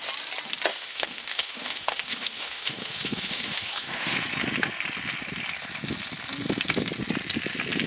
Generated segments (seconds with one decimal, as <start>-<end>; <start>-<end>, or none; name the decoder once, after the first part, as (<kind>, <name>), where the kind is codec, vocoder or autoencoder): 0.7-4.2 (autoencoder, DAC-VAE)